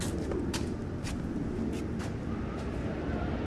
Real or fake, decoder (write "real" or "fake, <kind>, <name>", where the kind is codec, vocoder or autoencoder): real